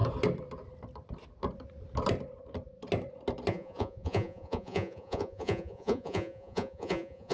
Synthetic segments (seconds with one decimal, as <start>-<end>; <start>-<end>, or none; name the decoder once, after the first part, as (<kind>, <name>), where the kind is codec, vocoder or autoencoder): 3.5-7.3 (vocoder, Vocos)